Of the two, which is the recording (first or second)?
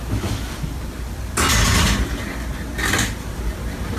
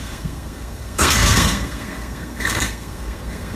first